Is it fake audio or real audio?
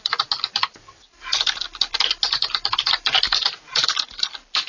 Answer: real